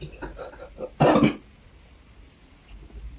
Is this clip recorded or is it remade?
recorded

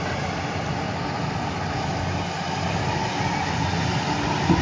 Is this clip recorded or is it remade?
recorded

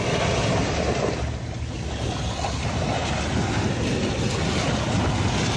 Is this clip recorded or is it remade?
recorded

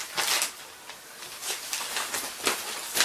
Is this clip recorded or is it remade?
recorded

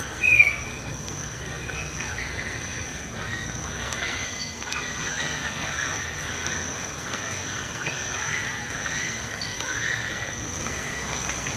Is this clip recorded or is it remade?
remade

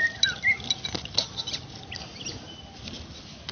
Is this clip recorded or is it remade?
recorded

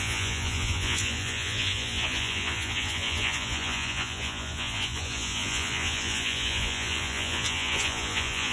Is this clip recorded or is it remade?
remade